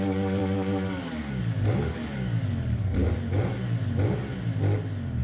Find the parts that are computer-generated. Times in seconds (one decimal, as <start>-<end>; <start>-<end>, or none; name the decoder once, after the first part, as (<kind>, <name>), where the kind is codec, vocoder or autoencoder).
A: 0.0-3.0 (codec, DAC)